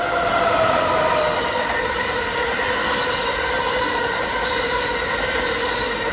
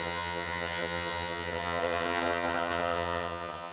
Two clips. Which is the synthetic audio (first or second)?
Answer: second